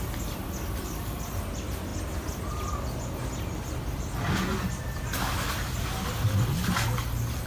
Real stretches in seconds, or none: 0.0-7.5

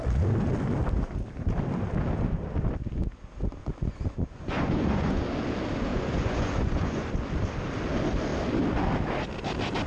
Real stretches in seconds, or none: 0.0-3.6; 5.2-5.9; 7.1-9.9

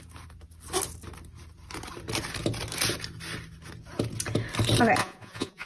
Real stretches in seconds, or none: 0.0-5.0

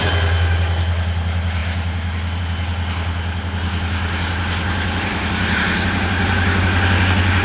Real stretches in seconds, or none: 0.0-7.4